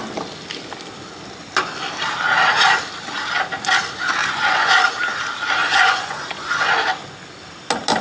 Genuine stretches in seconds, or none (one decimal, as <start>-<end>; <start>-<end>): 0.0-4.2; 4.7-5.6; 6.7-8.0